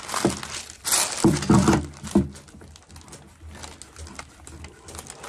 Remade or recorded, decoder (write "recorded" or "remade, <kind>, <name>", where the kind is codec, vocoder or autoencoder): recorded